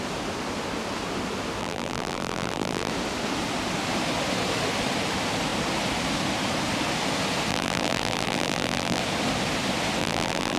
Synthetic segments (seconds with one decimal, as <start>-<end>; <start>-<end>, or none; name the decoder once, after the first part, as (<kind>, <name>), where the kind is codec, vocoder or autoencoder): 1.6-2.9 (vocoder, BigVGAN v2); 7.5-9.0; 10.0-10.6